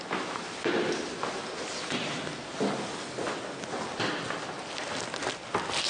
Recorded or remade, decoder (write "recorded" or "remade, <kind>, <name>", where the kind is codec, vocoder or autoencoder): recorded